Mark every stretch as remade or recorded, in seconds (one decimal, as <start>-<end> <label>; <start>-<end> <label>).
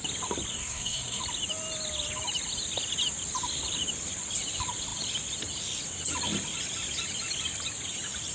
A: 0.0-0.5 recorded; 0.5-1.2 remade; 1.2-8.3 recorded